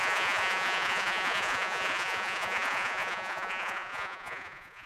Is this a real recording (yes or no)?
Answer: no